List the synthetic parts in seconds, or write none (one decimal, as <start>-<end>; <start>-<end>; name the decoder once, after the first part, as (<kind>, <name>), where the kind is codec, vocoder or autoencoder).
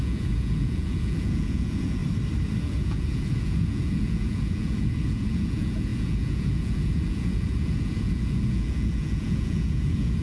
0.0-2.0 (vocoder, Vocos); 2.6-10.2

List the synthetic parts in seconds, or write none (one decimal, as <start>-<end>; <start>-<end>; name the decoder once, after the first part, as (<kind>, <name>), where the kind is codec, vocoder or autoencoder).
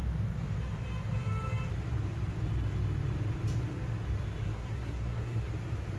4.4-5.5 (codec, SNAC)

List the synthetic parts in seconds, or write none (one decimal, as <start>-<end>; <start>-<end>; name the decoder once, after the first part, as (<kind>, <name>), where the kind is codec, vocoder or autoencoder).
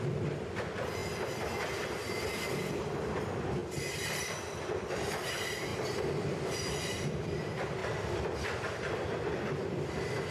0.0-3.6 (vocoder, BigVGAN v2); 4.2-5.7; 6.3-7.8; 8.6-10.3